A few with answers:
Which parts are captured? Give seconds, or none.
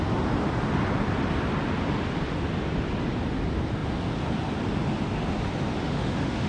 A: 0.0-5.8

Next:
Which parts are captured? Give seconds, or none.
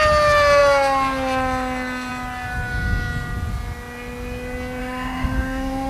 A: 0.0-4.8